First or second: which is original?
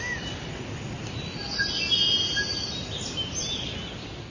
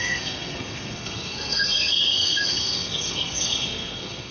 first